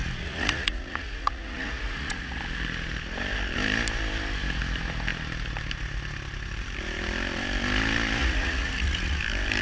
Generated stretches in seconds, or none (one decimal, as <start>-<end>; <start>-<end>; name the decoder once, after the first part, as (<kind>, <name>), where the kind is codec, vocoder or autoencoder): 0.0-2.4 (vocoder, Vocos); 8.2-9.2